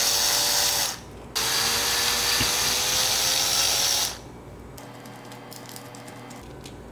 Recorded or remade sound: recorded